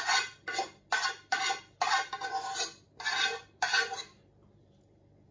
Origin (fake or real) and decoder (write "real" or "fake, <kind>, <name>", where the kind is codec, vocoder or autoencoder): real